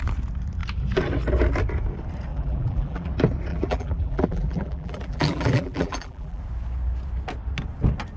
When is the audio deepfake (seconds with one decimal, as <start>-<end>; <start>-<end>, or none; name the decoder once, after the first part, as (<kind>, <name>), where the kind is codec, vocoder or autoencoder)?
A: 2.3-3.1 (vocoder, BigVGAN v2); 3.5-6.4